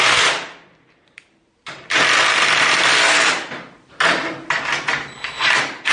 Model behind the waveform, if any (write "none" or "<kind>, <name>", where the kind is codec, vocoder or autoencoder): none